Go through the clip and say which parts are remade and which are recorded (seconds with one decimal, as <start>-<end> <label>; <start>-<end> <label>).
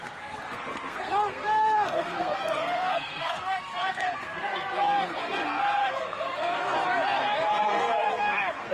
0.0-6.8 remade; 6.8-7.6 recorded; 7.6-8.7 remade